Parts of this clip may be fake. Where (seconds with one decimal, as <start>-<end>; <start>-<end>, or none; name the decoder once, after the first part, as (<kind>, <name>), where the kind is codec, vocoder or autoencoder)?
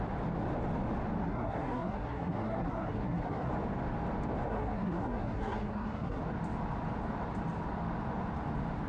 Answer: 1.2-3.5 (codec, SNAC); 4.5-6.2